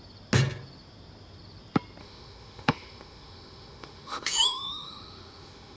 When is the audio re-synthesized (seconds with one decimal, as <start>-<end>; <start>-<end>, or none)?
2.0-5.8